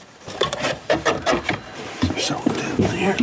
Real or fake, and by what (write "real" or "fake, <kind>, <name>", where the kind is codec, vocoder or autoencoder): fake, vocoder, BigVGAN v2